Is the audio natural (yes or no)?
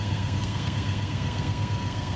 no